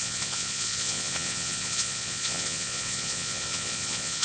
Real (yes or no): no